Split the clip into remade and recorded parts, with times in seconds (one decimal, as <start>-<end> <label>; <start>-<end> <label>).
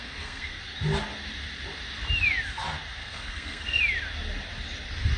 0.0-0.6 remade; 0.6-3.0 recorded; 3.0-3.8 remade; 3.8-5.2 recorded